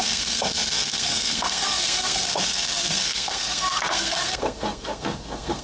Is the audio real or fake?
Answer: fake